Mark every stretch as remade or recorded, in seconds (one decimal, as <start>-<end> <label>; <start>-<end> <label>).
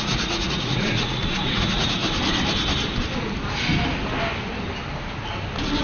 0.0-2.0 remade; 2.0-5.8 recorded